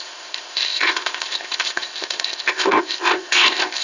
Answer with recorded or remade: remade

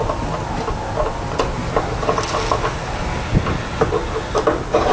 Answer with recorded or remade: recorded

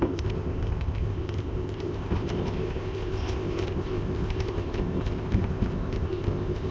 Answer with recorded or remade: remade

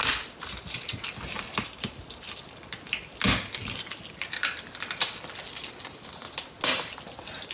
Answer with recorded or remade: recorded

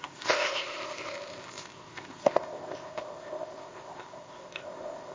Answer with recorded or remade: remade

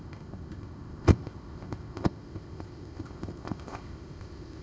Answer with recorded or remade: remade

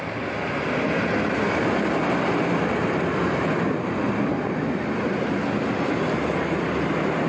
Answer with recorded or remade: recorded